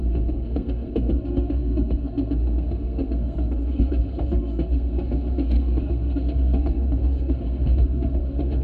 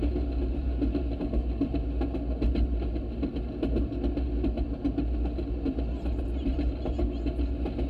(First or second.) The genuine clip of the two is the second